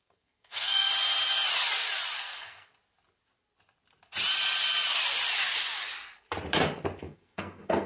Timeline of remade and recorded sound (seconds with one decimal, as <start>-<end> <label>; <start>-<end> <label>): 0.0-0.9 remade; 0.9-2.2 recorded; 2.2-2.7 remade; 2.7-7.0 recorded; 7.0-7.9 remade

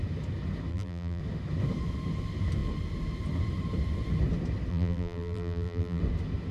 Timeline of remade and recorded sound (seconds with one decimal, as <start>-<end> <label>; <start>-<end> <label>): 0.0-0.7 recorded; 0.7-1.2 remade; 1.2-4.7 recorded; 4.7-6.0 remade; 6.0-6.5 recorded

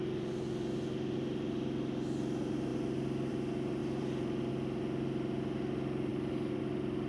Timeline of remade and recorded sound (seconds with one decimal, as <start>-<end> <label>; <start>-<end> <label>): 0.0-3.8 recorded; 3.8-4.5 remade; 4.5-7.1 recorded

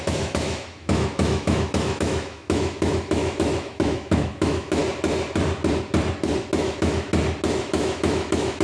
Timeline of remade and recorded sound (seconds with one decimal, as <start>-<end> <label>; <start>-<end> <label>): 0.0-4.8 remade; 4.8-6.6 recorded; 6.6-7.1 remade; 7.1-7.6 recorded; 7.6-8.6 remade

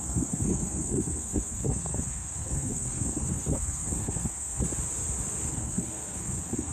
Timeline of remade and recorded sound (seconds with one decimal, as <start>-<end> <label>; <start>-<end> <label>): 0.0-4.6 remade; 4.6-5.5 recorded; 5.5-6.7 remade

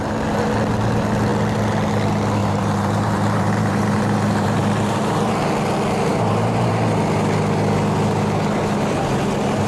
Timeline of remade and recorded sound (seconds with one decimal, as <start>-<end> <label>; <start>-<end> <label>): 0.0-2.4 recorded; 2.4-5.3 remade; 5.3-6.1 recorded; 6.1-6.7 remade; 6.7-9.7 recorded